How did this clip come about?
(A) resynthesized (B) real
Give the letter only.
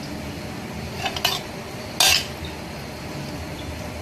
B